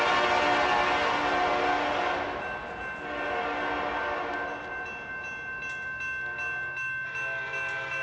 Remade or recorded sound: recorded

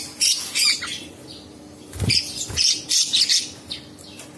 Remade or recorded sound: recorded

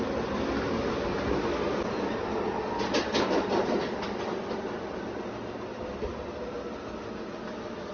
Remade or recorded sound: recorded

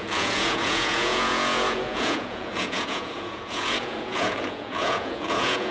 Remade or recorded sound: remade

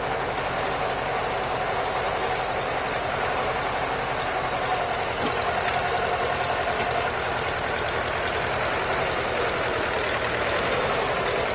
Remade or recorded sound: recorded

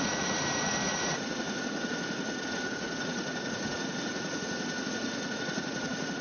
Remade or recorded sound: remade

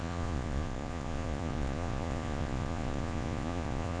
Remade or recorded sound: remade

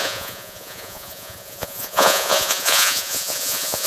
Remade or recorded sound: remade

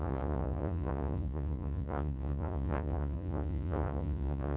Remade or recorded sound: remade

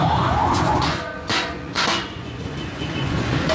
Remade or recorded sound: remade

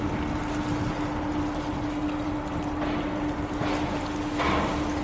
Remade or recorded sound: recorded